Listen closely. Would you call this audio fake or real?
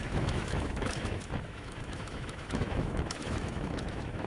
fake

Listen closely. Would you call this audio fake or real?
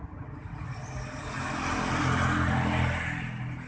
real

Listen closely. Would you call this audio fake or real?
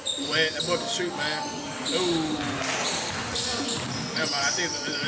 real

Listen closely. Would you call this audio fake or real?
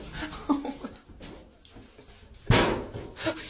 real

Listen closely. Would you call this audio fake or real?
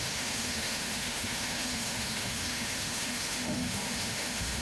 fake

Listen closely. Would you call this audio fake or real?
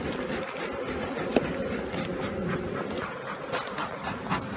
real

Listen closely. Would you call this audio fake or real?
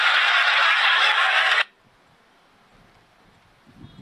real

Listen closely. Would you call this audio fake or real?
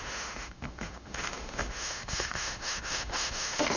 fake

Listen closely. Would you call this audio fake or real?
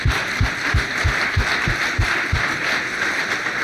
real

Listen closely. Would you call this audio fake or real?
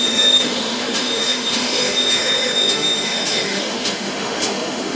fake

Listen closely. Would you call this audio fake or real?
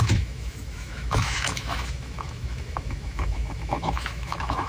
fake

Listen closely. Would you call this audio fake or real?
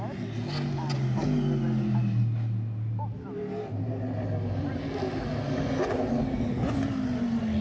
real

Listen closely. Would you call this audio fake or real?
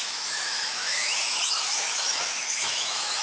fake